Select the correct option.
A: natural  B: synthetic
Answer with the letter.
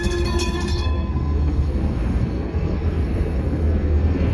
B